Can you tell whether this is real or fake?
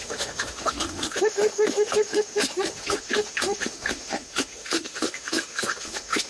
fake